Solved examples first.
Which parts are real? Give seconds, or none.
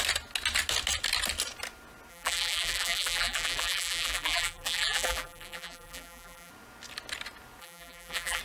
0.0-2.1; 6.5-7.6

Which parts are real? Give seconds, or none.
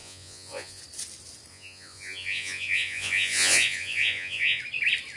0.8-1.5; 4.6-5.2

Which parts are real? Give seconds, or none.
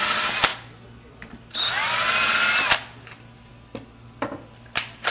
0.0-5.1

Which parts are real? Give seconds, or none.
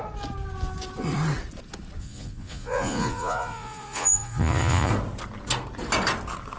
0.0-2.0; 4.9-6.6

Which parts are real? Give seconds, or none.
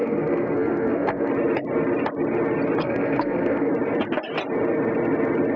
1.3-2.8; 3.7-5.6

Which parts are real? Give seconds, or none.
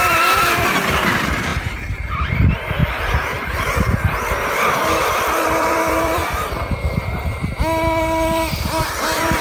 1.5-2.1; 2.8-4.5; 6.2-8.8